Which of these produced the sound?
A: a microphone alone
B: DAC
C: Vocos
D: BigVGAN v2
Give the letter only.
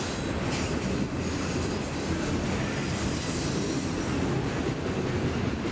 A